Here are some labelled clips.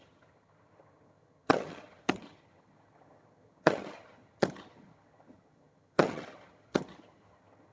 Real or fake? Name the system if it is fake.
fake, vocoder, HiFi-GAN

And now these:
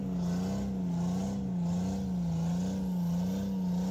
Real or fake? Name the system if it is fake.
real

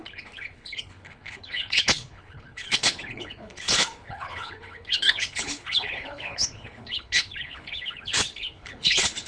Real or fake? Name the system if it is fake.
fake, codec, HILCodec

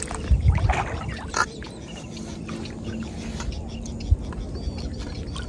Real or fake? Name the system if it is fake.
real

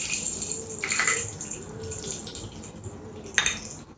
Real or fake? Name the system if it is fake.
real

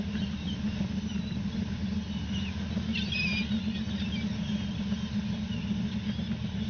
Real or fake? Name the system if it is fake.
real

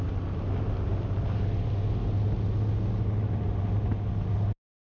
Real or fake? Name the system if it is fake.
real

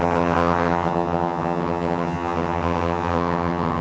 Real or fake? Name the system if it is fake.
fake, vocoder, HiFi-GAN